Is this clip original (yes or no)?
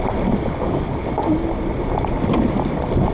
yes